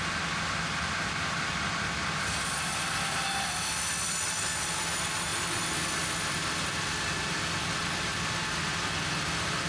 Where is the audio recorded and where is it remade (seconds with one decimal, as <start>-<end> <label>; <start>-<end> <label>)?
0.0-9.7 recorded